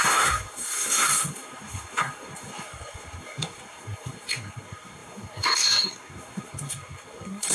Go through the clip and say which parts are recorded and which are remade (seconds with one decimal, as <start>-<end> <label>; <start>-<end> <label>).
0.0-7.5 remade

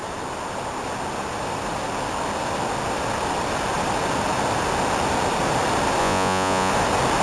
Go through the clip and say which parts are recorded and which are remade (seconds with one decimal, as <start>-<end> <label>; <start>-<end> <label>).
0.0-6.0 recorded; 6.0-6.7 remade; 6.7-7.2 recorded

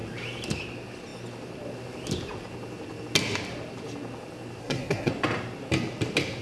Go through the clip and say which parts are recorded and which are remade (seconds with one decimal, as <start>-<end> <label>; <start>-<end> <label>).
0.0-4.6 recorded; 4.6-5.1 remade; 5.1-6.4 recorded